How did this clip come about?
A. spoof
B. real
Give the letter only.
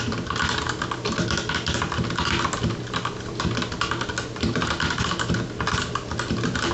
B